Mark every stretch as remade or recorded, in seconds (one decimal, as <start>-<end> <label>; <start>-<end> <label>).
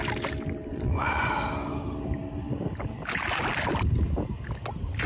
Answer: 0.0-0.7 recorded; 0.7-1.3 remade; 1.3-5.1 recorded